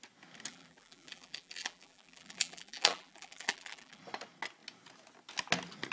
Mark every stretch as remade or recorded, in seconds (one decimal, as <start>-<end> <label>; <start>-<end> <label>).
0.0-0.5 recorded; 0.5-4.0 remade; 4.0-5.9 recorded